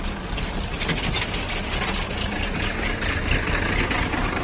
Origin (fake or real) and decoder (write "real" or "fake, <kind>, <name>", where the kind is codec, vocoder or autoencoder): real